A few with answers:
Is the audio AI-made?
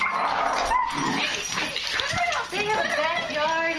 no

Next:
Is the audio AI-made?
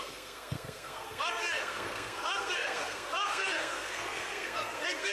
yes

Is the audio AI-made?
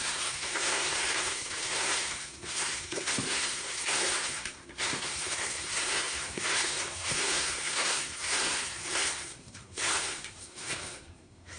yes